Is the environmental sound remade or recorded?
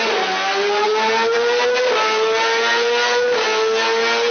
recorded